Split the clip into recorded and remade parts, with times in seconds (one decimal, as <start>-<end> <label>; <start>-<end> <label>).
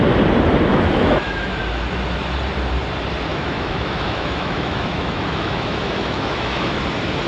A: 0.0-0.7 recorded; 0.7-1.6 remade; 1.6-3.3 recorded; 3.3-6.8 remade; 6.8-7.3 recorded